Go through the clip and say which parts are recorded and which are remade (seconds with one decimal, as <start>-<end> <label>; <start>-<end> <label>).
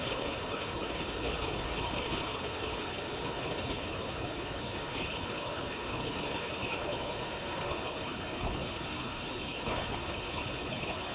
0.0-11.1 remade